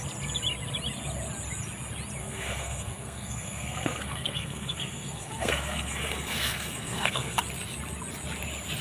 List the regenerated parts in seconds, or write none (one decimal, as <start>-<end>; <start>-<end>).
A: 2.2-7.4